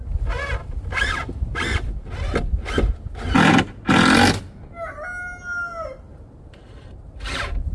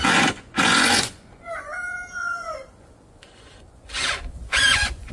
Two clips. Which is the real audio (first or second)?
first